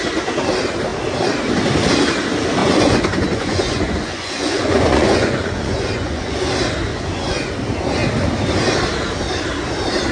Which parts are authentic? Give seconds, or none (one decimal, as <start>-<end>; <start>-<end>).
0.0-2.6; 6.5-6.9; 7.5-10.1